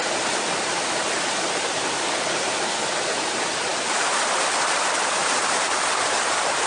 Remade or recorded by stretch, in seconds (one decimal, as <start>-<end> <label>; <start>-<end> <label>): 0.0-6.7 recorded